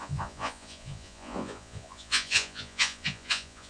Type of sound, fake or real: fake